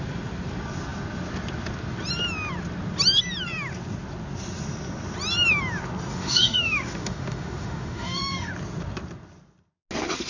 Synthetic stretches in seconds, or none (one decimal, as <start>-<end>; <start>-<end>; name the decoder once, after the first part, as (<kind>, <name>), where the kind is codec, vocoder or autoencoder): 6.1-8.5 (autoencoder, DAC-VAE)